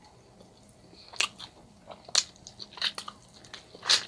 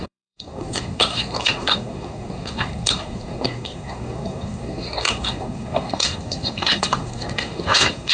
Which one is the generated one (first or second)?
second